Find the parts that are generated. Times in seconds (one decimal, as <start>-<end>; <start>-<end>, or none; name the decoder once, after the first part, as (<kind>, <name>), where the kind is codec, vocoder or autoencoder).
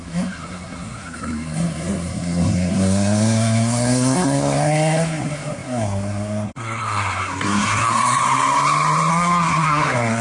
0.0-8.2 (codec, SNAC); 9.1-10.2